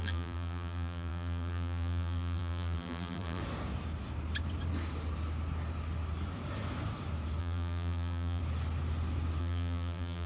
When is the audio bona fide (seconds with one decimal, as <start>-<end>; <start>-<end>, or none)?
3.4-7.4; 8.4-9.4

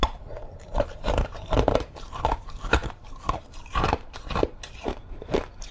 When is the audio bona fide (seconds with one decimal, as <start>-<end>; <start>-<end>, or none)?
none

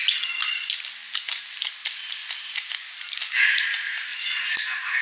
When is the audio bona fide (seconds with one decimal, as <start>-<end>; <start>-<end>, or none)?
0.0-1.0; 1.7-5.0

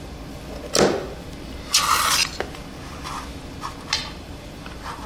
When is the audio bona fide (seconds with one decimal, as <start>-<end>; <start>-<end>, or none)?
0.0-4.0

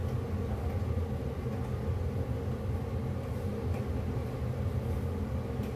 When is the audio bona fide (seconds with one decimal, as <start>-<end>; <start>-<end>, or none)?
0.0-5.8

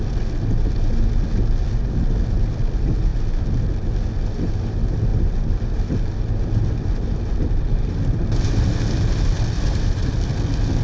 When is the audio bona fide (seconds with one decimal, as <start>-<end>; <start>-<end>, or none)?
0.0-5.1; 10.1-10.8

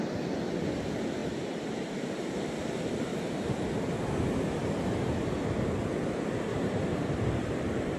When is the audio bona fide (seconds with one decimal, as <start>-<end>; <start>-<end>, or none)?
0.0-3.1; 3.8-4.6; 5.7-6.5; 7.2-8.0